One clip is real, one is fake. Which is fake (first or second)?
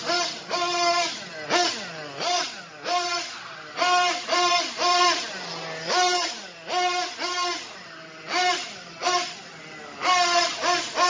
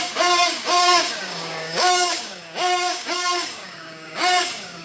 second